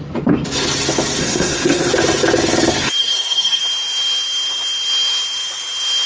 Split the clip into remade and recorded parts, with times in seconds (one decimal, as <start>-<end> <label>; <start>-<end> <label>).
0.0-1.2 recorded; 1.2-1.9 remade; 1.9-3.0 recorded; 3.0-3.6 remade; 3.6-6.1 recorded